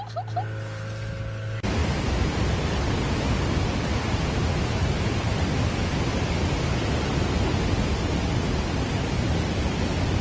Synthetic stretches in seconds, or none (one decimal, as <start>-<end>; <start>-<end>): 1.8-3.2